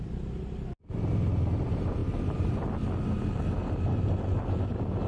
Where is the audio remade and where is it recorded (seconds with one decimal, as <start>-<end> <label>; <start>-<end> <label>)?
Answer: 0.0-5.1 recorded